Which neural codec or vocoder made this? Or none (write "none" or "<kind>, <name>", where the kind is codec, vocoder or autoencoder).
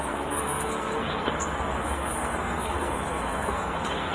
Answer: codec, SNAC